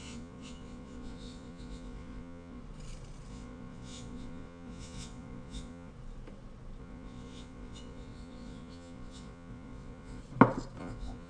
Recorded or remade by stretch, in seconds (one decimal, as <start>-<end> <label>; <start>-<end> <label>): 0.0-2.6 remade; 2.6-3.3 recorded; 3.3-5.9 remade; 5.9-6.8 recorded; 6.8-10.2 remade; 10.2-10.8 recorded; 10.8-11.3 remade